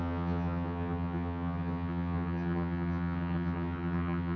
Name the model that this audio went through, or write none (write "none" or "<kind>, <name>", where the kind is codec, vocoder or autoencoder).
vocoder, HiFi-GAN